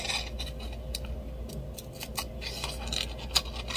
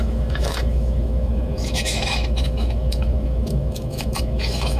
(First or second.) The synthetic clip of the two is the second